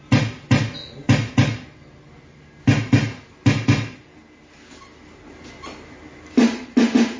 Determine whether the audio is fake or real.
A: real